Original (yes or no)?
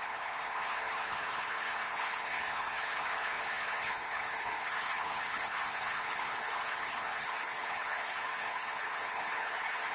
no